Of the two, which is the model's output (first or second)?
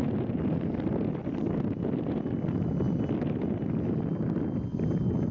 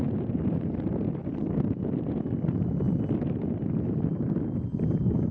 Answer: second